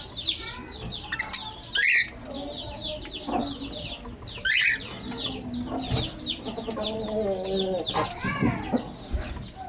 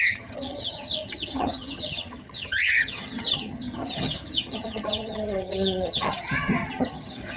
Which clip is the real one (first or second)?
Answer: first